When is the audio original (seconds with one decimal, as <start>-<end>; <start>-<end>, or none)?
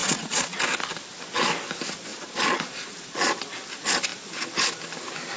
0.6-2.1; 3.3-5.4